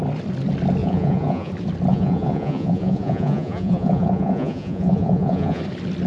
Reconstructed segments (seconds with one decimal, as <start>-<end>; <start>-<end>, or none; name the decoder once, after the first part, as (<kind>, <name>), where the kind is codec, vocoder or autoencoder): 0.8-1.5 (vocoder, Vocos); 1.9-5.6